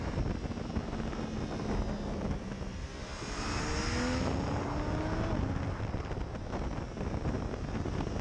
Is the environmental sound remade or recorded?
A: recorded